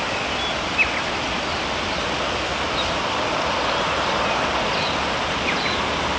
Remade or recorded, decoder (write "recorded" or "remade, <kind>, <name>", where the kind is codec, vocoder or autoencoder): recorded